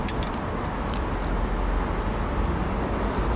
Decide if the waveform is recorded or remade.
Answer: recorded